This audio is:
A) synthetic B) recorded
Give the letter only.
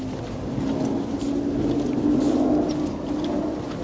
B